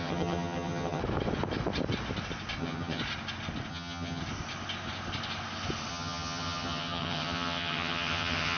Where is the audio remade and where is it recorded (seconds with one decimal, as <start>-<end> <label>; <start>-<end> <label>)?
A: 0.0-1.0 remade; 1.0-2.6 recorded; 2.6-3.0 remade; 3.0-3.7 recorded; 3.7-4.2 remade; 4.2-5.9 recorded; 5.9-8.6 remade